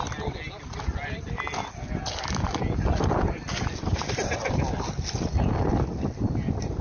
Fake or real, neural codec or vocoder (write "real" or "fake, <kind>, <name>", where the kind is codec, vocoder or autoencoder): real